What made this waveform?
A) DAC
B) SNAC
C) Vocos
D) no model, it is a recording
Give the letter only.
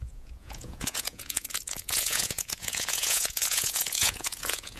C